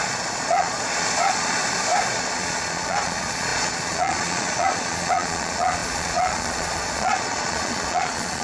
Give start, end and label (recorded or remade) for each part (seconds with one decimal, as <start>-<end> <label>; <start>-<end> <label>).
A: 0.0-1.6 remade; 1.6-2.1 recorded; 2.1-8.4 remade